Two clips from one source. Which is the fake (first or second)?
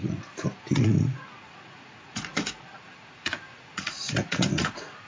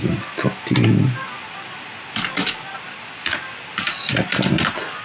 first